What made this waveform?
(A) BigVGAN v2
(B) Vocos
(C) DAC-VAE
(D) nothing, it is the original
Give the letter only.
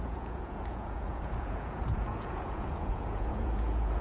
B